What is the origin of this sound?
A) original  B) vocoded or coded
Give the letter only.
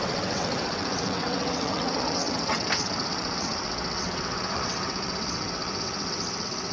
B